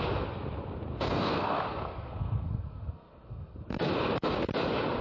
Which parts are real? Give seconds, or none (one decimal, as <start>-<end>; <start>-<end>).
0.0-0.9; 3.9-5.0